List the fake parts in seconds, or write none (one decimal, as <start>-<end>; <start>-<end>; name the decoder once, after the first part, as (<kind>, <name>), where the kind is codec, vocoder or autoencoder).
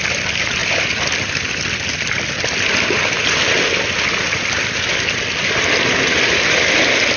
none